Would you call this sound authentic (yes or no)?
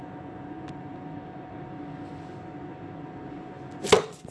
yes